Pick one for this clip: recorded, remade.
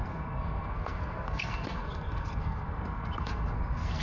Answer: remade